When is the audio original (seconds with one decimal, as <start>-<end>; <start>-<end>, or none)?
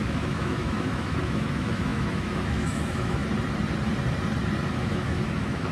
3.2-4.7